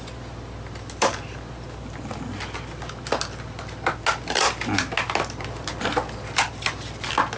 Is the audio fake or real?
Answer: real